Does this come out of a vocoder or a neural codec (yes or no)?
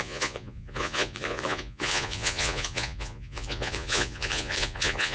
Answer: yes